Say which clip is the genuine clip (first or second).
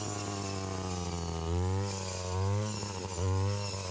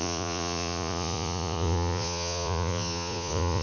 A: first